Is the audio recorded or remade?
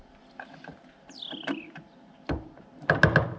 recorded